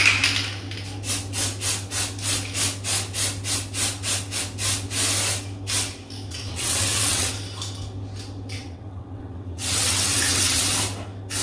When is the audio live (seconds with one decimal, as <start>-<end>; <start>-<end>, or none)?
0.0-6.3; 7.3-8.6; 10.6-11.4